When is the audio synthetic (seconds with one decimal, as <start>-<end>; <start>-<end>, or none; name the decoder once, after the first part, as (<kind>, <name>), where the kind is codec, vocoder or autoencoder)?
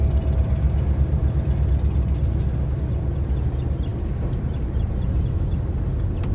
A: none